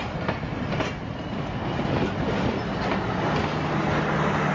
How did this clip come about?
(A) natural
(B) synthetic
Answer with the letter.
A